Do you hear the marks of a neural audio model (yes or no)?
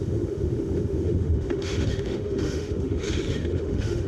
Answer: yes